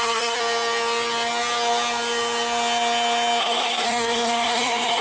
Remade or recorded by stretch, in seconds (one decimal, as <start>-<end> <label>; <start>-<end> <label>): 0.0-0.4 remade; 0.4-3.4 recorded; 3.4-5.0 remade